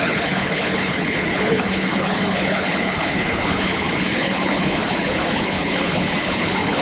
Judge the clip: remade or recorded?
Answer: remade